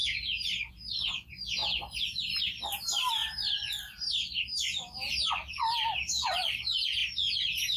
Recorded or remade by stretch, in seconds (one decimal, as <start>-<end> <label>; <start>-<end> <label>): 0.0-0.7 recorded; 0.7-1.6 remade; 1.6-2.2 recorded; 2.2-7.8 remade